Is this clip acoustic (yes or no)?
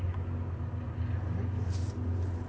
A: yes